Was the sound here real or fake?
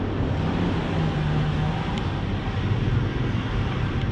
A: real